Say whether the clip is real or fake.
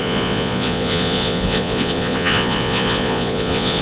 fake